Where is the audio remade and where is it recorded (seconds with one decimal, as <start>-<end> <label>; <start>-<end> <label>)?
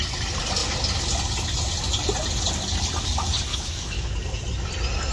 0.0-3.5 recorded; 3.5-4.1 remade; 4.1-5.1 recorded